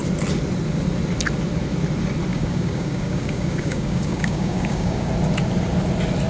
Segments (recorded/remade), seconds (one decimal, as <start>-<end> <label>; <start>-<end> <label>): 0.0-2.3 recorded; 2.3-5.1 remade; 5.1-6.3 recorded